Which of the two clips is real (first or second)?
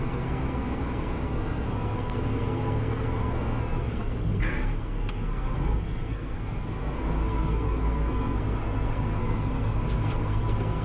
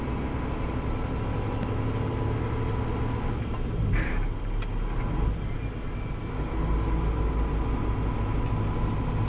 second